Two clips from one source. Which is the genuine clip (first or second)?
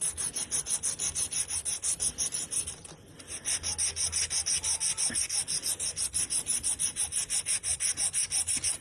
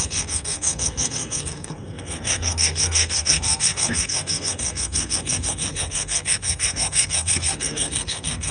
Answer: first